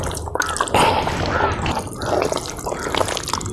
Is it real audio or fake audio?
real